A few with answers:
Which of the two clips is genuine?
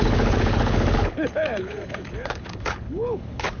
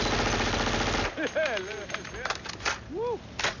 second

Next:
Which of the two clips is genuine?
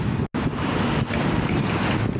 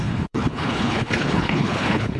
first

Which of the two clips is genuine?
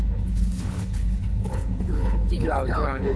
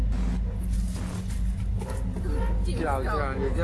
second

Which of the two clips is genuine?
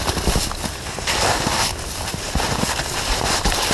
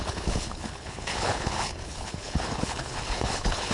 first